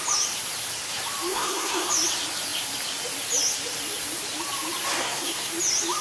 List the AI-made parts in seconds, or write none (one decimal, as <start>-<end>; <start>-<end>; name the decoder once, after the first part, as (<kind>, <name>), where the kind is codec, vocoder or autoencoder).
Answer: 1.3-1.9 (codec, SNAC); 5.0-5.5